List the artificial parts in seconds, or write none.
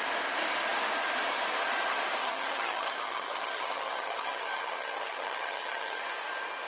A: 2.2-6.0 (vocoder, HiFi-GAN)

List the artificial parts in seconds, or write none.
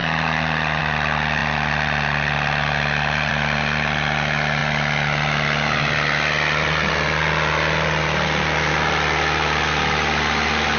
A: none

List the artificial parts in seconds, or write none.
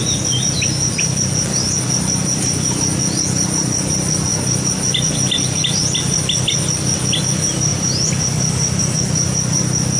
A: none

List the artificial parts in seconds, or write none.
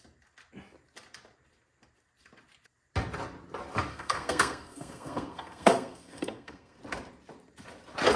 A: 3.9-6.8 (codec, SNAC)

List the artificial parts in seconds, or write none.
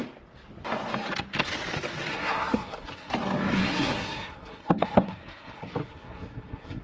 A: 2.1-3.1 (codec, SNAC); 3.6-6.8